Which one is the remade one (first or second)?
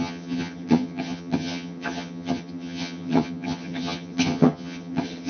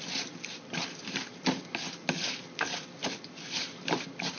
first